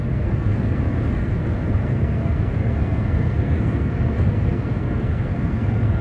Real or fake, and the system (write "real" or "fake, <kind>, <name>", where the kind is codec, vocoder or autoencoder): fake, codec, SNAC